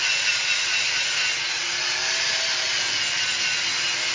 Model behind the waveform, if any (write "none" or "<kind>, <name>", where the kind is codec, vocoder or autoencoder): none